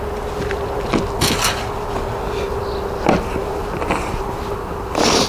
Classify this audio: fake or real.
real